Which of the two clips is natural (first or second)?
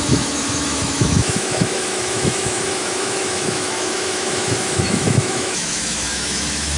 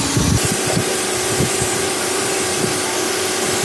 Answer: second